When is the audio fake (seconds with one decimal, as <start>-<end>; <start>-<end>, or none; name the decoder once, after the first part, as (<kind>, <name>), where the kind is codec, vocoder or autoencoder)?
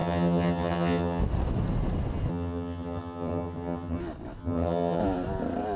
0.0-1.2 (vocoder, HiFi-GAN); 2.3-4.0; 4.4-5.0